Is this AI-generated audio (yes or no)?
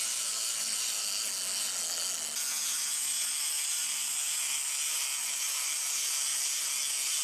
no